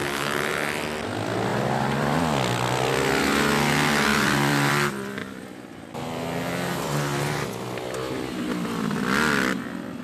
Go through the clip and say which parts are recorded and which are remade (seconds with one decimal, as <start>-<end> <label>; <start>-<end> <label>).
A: 0.0-1.5 recorded; 1.5-2.2 remade; 2.2-4.1 recorded; 4.1-4.7 remade; 4.7-5.2 recorded; 5.2-5.9 remade; 5.9-10.0 recorded